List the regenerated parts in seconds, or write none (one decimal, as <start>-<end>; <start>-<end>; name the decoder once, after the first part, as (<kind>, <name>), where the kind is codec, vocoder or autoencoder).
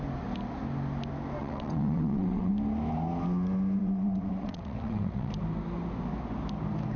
1.4-2.5 (vocoder, WaveNeXt); 3.8-5.3